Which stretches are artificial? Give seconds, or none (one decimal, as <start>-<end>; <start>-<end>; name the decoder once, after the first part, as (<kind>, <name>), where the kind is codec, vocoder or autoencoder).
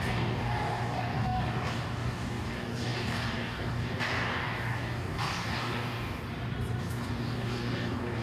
0.0-6.2 (codec, DAC); 6.8-8.2